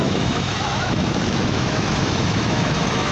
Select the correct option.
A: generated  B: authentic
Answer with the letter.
A